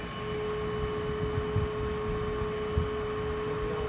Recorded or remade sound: recorded